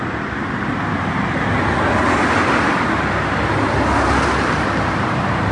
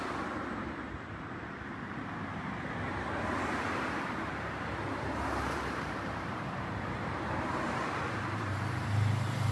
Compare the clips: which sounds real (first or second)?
first